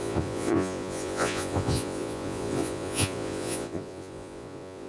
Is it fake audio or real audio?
fake